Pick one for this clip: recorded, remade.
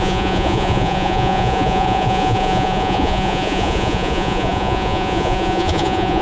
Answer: remade